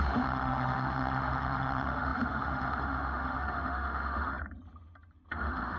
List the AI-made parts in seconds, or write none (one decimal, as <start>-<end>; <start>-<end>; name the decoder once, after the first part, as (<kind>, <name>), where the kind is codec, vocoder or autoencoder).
0.0-4.3 (autoencoder, DAC-VAE); 5.3-5.8